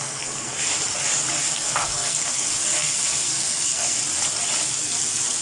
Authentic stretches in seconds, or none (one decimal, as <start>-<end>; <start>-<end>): 0.7-1.5; 4.0-4.8